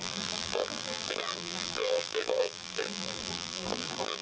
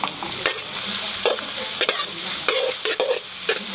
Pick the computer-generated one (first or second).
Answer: first